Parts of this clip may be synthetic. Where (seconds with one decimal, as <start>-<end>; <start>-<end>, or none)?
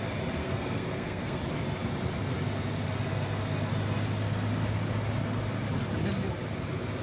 0.4-1.4